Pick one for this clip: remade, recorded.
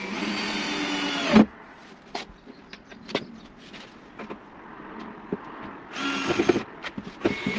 recorded